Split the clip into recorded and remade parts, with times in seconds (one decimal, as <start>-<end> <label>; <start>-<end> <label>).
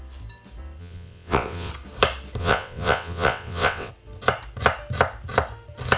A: 0.0-0.8 recorded; 0.8-1.7 remade; 1.7-2.4 recorded; 2.4-3.9 remade; 3.9-6.0 recorded